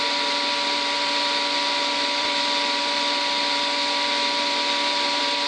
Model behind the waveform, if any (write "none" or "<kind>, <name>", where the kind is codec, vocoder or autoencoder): vocoder, BigVGAN v2